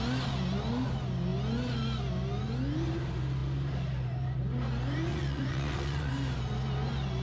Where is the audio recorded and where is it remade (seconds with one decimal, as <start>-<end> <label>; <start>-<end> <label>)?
0.0-5.1 recorded; 5.1-6.1 remade; 6.1-7.2 recorded